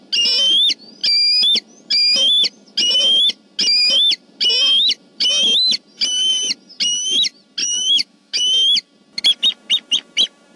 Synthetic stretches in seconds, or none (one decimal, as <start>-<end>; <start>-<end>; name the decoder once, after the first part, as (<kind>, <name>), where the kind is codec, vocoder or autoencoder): 7.6-8.4 (autoencoder, DAC-VAE)